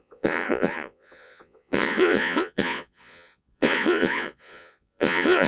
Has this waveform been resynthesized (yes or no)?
yes